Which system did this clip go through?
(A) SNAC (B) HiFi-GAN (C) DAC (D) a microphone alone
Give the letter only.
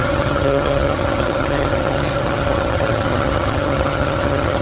B